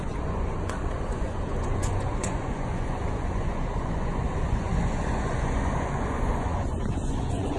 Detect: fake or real fake